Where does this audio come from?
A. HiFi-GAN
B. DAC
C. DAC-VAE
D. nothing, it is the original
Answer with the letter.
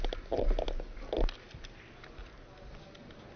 D